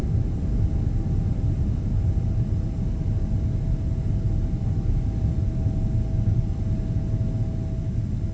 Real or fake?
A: real